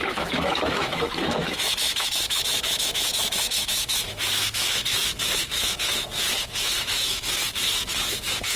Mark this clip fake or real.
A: fake